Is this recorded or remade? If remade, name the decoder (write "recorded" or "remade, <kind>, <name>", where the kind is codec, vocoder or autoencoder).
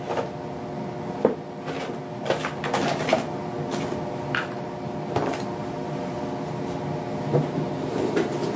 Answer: recorded